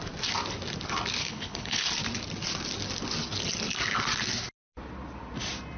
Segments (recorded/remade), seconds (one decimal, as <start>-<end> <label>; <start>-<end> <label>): 0.0-1.2 recorded; 1.2-1.9 remade; 1.9-5.8 recorded